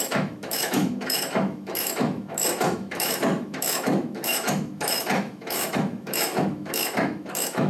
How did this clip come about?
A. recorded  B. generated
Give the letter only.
B